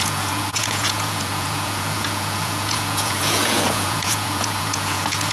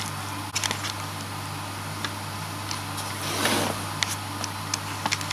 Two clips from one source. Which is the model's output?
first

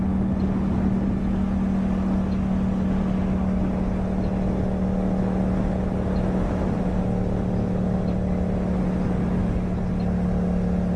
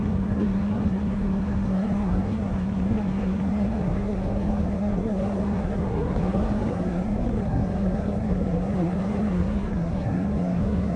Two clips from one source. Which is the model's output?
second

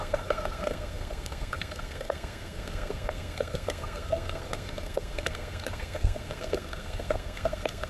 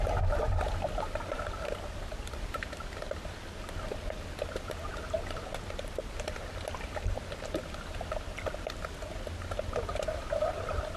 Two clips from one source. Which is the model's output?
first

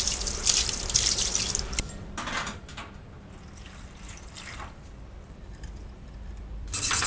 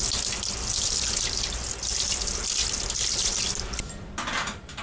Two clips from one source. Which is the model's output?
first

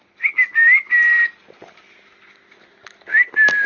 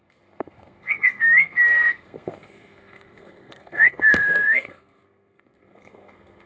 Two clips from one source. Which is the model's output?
second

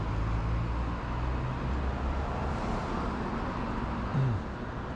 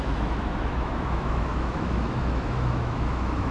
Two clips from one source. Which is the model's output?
second